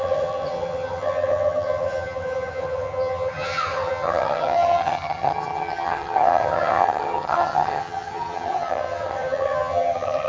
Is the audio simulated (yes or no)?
yes